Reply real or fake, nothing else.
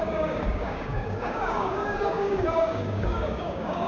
fake